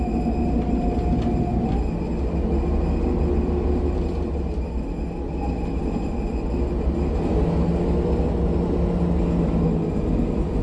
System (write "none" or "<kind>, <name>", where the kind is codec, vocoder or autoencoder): none